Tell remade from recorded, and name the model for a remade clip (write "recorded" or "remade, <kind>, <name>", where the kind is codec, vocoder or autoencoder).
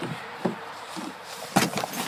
remade, vocoder, BigVGAN v2